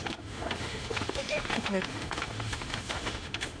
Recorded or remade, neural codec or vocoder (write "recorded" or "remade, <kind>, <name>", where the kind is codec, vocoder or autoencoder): remade, autoencoder, DAC-VAE